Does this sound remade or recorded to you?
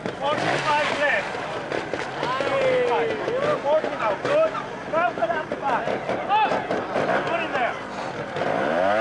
recorded